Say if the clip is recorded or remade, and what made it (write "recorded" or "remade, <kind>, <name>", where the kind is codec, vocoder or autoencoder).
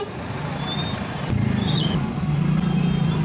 recorded